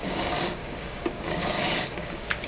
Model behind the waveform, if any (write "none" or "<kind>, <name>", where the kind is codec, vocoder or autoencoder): codec, DAC